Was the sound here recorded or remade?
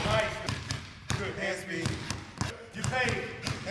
recorded